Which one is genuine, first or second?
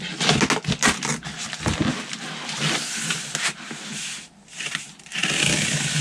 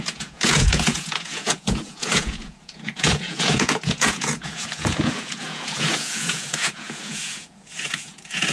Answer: first